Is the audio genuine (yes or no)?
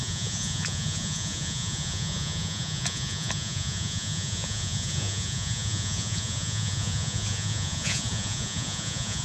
no